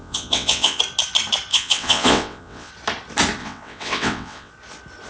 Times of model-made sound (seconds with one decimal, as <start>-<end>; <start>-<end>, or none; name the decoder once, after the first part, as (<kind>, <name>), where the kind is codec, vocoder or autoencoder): 0.0-0.8 (vocoder, WaveNeXt); 1.5-2.7; 3.4-4.5